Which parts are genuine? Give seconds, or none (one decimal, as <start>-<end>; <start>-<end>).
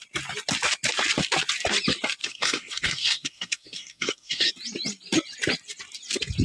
0.0-2.2; 4.5-6.4